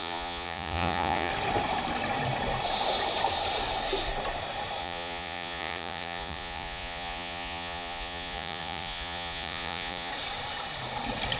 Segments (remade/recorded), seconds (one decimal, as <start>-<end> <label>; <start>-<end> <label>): 0.0-1.3 remade; 1.3-4.8 recorded; 4.8-10.1 remade; 10.1-11.4 recorded